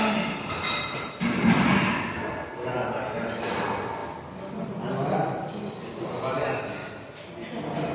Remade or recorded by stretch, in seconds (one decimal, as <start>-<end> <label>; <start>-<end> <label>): 0.0-7.9 recorded